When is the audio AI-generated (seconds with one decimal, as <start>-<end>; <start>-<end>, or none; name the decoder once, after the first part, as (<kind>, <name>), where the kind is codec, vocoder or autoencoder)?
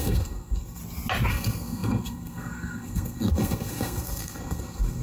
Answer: 0.0-0.8 (codec, SNAC); 1.3-5.0